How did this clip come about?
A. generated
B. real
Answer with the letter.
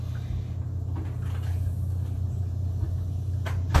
B